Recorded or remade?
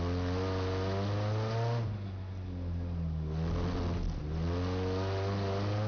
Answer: recorded